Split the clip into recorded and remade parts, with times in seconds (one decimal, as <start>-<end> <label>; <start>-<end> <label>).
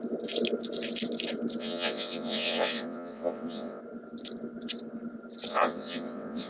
0.0-1.6 recorded; 1.6-3.8 remade; 3.8-5.5 recorded; 5.5-6.5 remade